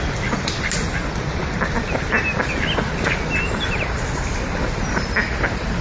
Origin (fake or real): real